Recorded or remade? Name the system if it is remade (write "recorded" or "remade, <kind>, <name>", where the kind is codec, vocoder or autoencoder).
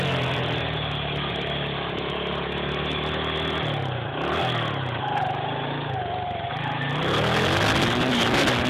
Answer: recorded